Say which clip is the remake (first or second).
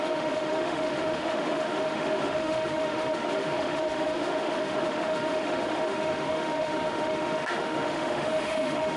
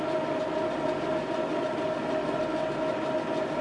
first